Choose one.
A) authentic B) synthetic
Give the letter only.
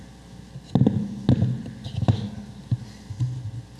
A